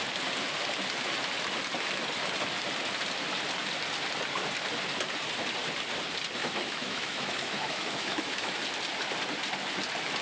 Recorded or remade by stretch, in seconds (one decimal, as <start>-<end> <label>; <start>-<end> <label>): 0.0-6.4 recorded; 6.4-8.6 remade; 8.6-10.2 recorded